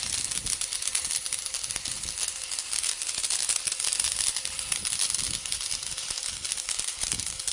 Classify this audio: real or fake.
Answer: real